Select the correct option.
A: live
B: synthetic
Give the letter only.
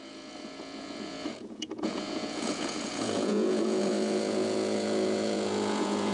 B